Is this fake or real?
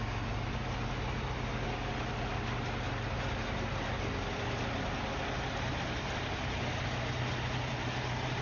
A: real